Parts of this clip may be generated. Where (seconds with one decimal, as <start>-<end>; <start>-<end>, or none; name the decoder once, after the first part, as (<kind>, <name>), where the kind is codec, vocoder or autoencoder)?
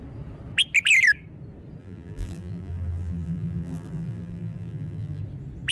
1.8-5.2 (vocoder, BigVGAN v2)